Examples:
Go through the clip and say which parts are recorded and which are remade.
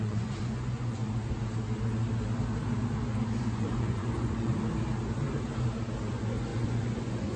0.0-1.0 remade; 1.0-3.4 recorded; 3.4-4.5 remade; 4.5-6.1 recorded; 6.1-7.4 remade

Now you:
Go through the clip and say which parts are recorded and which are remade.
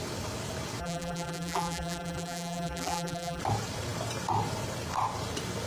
0.0-0.8 recorded; 0.8-3.4 remade; 3.4-5.7 recorded